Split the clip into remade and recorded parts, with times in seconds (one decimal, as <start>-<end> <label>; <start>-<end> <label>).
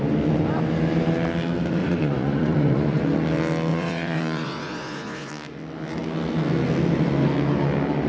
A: 0.0-1.8 recorded; 1.8-3.0 remade; 3.0-3.7 recorded; 3.7-5.3 remade; 5.3-8.1 recorded